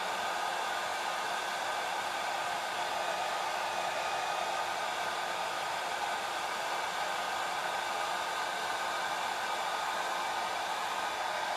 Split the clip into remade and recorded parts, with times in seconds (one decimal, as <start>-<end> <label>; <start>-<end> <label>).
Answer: 0.0-0.9 recorded; 0.9-2.3 remade; 2.3-4.9 recorded; 4.9-6.6 remade; 6.6-11.6 recorded